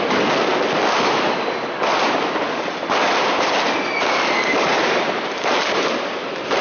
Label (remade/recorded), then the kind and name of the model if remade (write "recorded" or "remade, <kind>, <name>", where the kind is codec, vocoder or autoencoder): recorded